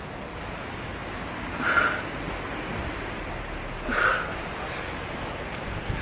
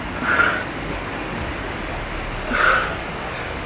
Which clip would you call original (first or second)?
first